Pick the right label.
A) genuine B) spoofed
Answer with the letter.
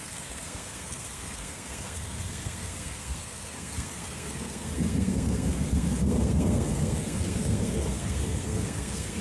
B